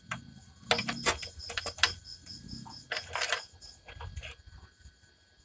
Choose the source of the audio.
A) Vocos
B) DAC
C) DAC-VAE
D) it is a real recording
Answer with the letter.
D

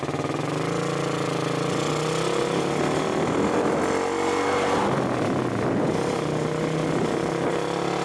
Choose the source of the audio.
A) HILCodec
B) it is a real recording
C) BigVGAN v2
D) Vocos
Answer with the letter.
B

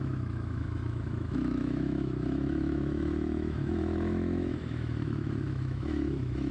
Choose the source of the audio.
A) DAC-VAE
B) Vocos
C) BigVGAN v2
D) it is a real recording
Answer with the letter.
A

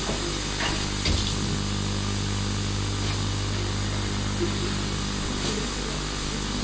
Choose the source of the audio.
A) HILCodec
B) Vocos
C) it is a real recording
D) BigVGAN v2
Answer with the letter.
C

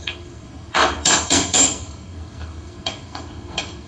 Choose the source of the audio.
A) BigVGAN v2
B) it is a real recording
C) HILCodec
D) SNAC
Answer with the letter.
D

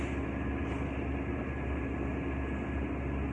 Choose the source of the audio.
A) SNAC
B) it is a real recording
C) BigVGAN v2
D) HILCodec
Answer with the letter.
B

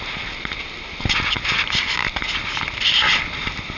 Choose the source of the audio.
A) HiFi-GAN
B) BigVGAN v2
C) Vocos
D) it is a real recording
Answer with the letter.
D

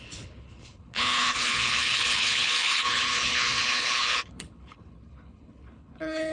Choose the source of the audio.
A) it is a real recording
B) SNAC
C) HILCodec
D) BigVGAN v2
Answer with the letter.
C